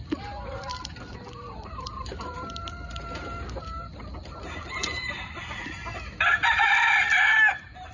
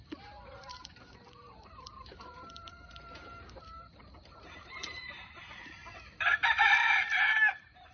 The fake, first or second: second